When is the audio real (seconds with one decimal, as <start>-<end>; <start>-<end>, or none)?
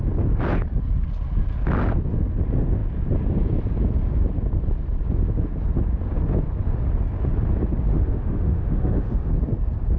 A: 0.0-7.9; 9.3-10.0